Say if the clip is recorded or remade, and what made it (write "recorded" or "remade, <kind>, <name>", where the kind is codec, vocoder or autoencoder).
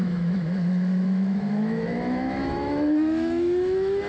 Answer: remade, autoencoder, DAC-VAE